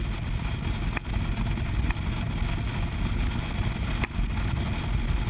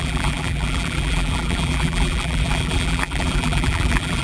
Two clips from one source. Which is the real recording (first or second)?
first